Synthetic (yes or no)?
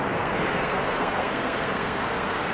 yes